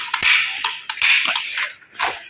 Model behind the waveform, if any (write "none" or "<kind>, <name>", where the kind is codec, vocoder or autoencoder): none